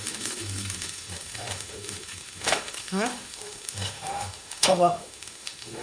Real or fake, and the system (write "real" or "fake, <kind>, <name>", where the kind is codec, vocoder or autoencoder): fake, autoencoder, DAC-VAE